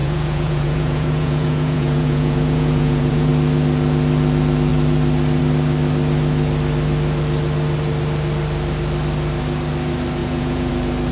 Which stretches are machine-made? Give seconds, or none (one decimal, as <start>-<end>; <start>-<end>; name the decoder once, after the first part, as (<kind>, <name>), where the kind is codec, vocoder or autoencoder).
0.0-3.3 (vocoder, Vocos); 10.2-10.7